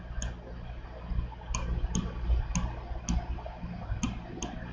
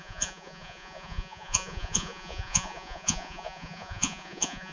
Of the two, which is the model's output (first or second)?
second